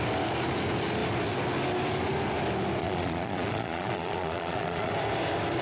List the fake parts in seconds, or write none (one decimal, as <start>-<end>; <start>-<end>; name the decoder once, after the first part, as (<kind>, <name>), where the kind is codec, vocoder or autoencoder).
2.8-4.9 (vocoder, Vocos)